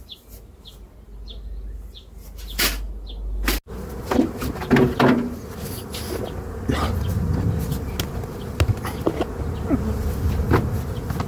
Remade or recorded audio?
recorded